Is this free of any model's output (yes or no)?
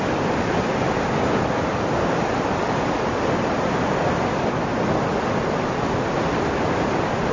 yes